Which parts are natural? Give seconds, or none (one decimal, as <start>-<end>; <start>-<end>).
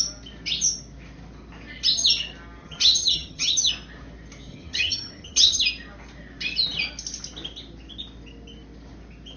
0.0-2.6; 3.7-4.5; 5.6-9.4